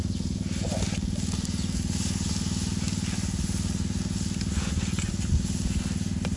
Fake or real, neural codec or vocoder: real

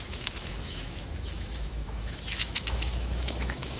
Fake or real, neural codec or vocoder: fake, autoencoder, DAC-VAE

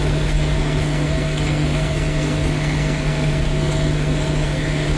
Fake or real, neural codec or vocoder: fake, codec, SNAC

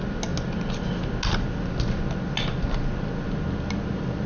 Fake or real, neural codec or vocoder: real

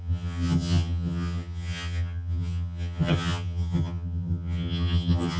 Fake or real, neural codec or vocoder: fake, vocoder, HiFi-GAN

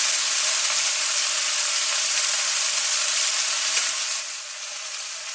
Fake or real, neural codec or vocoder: real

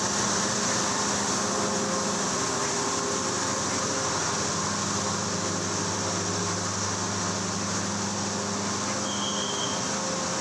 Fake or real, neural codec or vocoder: real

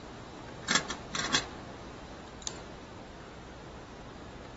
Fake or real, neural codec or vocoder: real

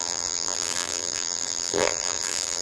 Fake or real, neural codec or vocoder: fake, vocoder, BigVGAN v2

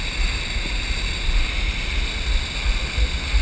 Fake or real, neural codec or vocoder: real